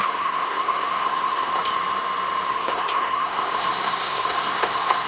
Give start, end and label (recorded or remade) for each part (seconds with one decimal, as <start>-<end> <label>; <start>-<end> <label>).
0.0-1.5 remade; 1.5-2.5 recorded; 2.5-5.1 remade